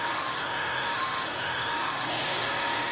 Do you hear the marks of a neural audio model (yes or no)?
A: yes